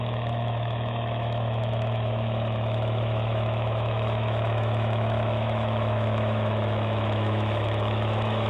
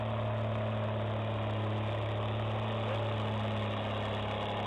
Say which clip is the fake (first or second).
first